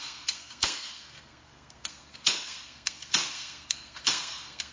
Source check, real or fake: fake